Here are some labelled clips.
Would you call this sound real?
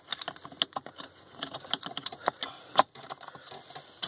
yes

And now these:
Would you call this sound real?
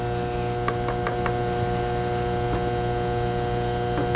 yes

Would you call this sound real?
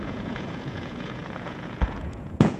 no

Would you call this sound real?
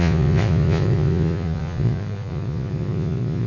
no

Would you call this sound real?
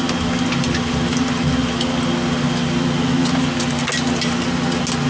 yes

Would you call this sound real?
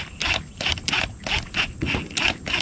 yes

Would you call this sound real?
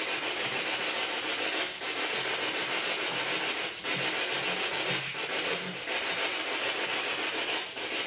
yes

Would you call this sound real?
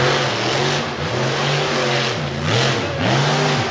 yes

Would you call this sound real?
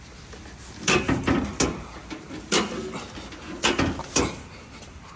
yes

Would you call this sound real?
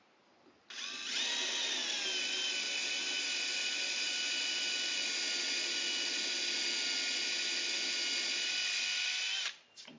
yes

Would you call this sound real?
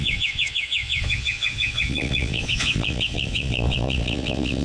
no